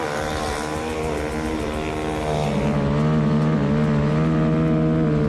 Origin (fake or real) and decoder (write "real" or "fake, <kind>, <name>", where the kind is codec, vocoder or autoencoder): real